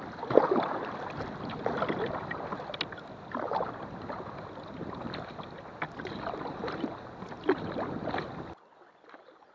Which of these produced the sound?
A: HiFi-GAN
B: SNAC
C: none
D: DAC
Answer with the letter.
C